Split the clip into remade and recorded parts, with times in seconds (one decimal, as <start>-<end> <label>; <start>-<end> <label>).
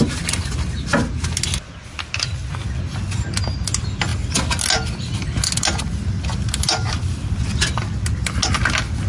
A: 0.0-9.1 recorded